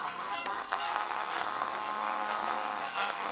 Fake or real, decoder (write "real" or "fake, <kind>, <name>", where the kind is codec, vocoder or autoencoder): fake, codec, SNAC